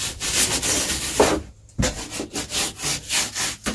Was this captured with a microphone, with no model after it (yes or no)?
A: yes